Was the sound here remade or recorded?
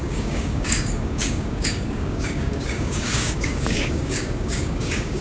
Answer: remade